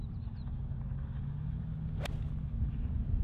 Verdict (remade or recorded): recorded